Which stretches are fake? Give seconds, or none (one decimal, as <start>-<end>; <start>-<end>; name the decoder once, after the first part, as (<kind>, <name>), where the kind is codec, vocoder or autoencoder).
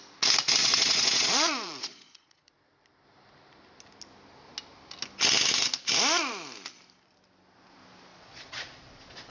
0.6-2.5 (vocoder, Vocos); 8.1-9.3